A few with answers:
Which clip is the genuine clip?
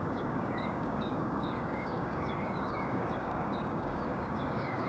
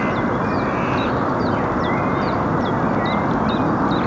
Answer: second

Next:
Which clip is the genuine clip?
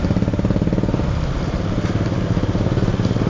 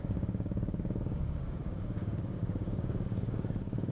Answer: first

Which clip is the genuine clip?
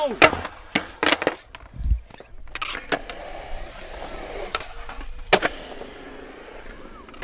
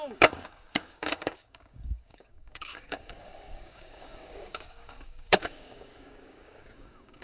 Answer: first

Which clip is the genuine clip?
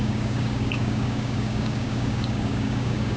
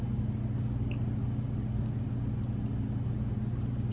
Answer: second